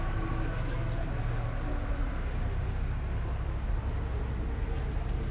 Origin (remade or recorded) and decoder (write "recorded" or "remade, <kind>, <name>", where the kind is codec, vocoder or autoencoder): recorded